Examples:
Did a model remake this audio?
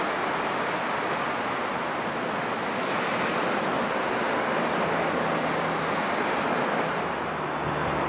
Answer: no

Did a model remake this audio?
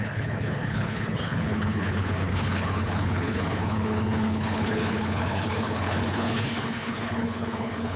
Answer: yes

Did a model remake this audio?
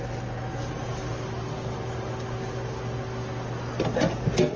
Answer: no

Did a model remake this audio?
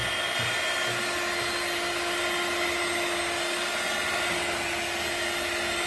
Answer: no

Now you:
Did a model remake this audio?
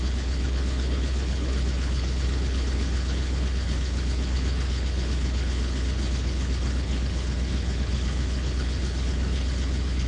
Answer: yes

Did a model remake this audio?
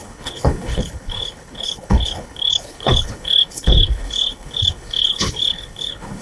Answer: yes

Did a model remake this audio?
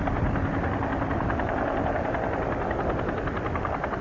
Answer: no